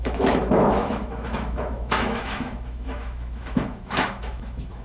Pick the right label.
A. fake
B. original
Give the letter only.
A